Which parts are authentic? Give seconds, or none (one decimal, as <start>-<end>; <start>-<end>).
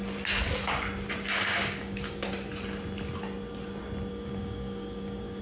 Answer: 0.0-1.3; 2.3-4.1